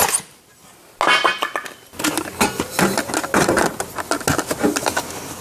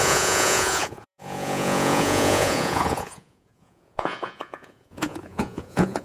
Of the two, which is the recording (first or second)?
first